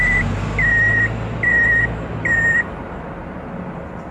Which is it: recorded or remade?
remade